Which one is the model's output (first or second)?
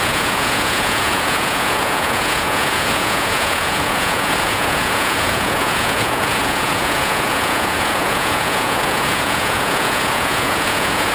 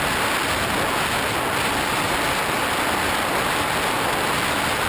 first